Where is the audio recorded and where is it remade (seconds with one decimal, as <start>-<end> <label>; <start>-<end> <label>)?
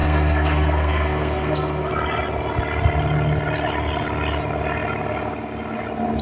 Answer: 0.0-1.9 remade; 1.9-6.2 recorded